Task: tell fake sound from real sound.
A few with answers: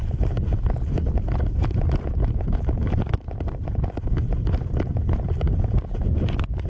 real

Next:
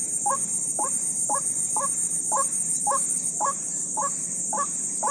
fake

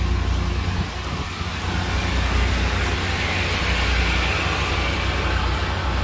real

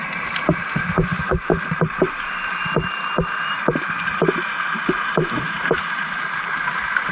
fake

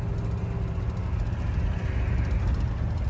real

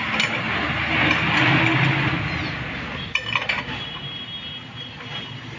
real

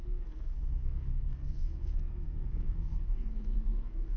fake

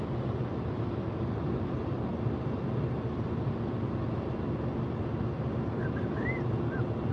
real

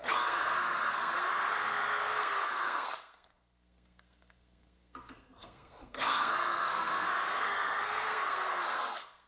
fake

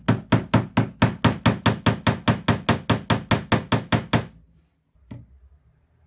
real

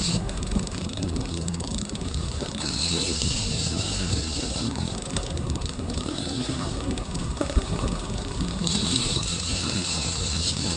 fake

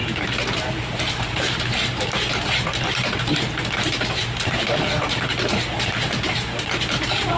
fake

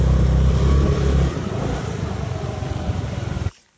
real